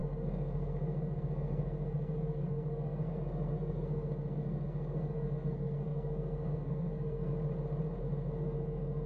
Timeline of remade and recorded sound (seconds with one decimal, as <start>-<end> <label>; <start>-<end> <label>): 0.0-7.3 remade; 7.3-8.0 recorded; 8.0-9.1 remade